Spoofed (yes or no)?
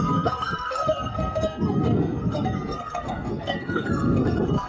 yes